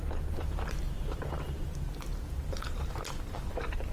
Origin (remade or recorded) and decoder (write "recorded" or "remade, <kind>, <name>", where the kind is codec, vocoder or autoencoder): remade, vocoder, BigVGAN v2